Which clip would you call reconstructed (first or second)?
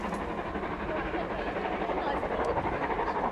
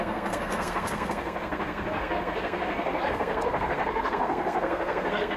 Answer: second